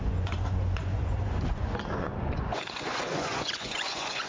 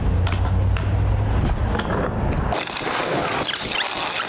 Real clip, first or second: second